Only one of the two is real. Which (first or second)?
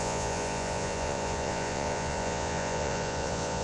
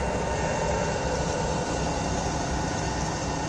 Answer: second